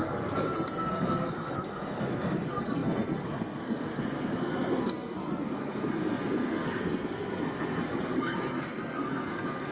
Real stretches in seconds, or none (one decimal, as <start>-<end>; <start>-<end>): none